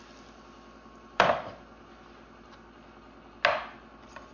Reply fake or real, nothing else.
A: real